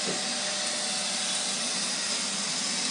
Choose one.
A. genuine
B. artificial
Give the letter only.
A